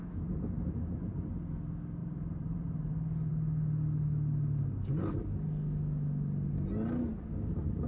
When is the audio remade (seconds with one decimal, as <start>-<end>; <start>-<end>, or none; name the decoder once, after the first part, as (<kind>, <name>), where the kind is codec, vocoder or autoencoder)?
2.0-2.9 (vocoder, BigVGAN v2)